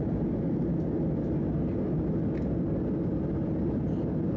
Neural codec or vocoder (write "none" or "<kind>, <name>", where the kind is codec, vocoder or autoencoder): none